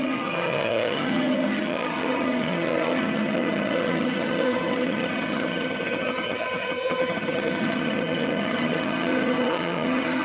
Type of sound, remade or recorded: remade